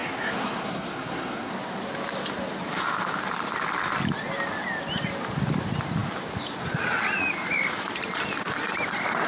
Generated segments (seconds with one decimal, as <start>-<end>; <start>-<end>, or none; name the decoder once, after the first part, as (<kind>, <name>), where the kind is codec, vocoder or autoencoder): 0.0-1.5 (codec, SNAC)